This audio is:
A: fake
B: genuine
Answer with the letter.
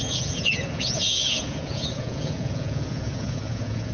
A